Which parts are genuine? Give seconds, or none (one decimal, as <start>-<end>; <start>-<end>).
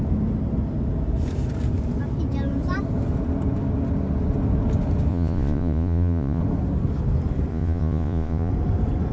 0.0-5.1; 6.4-7.5; 8.5-9.1